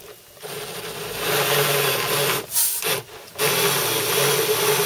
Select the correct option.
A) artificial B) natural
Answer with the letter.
B